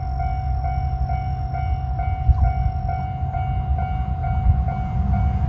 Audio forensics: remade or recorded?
recorded